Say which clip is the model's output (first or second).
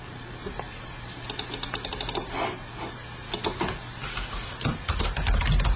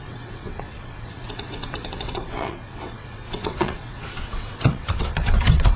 second